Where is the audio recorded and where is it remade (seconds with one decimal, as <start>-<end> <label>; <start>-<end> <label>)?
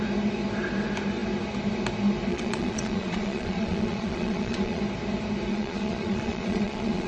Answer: 0.0-2.3 recorded; 2.3-4.8 remade; 4.8-5.5 recorded; 5.5-7.1 remade